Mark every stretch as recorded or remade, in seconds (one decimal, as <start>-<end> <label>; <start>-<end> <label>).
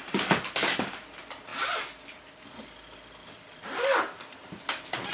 0.0-5.1 recorded